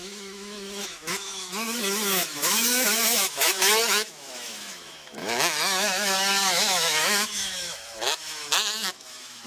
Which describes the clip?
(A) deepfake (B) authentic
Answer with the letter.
A